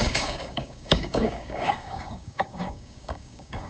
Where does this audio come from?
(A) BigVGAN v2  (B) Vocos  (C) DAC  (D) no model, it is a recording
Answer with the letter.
C